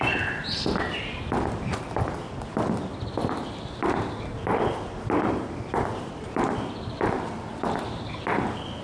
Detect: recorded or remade recorded